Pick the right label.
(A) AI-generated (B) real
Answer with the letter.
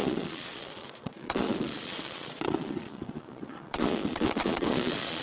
A